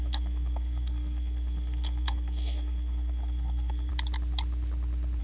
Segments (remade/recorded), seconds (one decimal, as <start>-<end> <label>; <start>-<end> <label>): 0.0-3.9 remade; 3.9-5.2 recorded